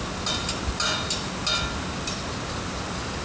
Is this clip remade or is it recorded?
recorded